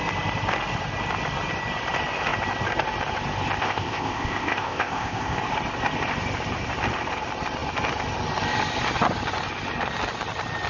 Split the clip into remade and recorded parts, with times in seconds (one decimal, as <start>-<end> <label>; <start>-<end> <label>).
0.0-3.6 recorded; 3.6-5.4 remade; 5.4-10.7 recorded